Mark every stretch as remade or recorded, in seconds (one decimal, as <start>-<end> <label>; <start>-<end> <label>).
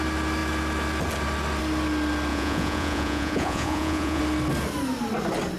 0.0-2.3 recorded; 2.3-4.2 remade; 4.2-5.6 recorded